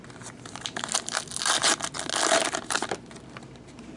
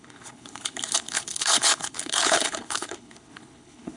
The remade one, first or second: second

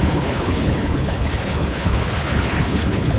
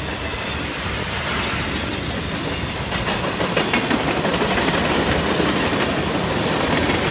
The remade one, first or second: first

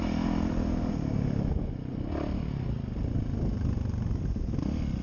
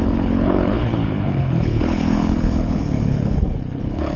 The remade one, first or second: second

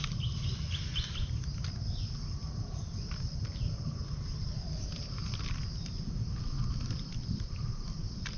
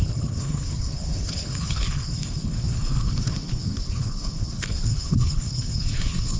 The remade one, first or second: second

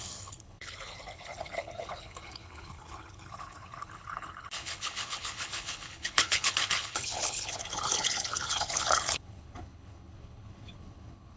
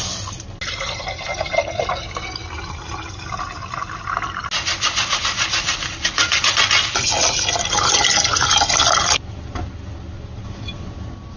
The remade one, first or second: first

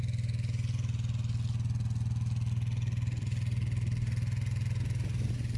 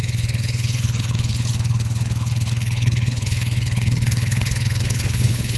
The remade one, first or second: second